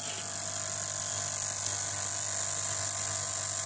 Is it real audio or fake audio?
real